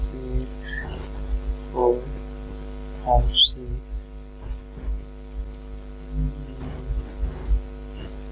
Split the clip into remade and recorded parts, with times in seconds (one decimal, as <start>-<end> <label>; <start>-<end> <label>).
0.0-8.3 recorded

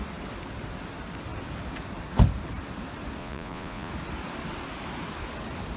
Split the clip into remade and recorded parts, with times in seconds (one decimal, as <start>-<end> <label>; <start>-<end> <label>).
0.0-3.2 recorded; 3.2-3.9 remade; 3.9-5.8 recorded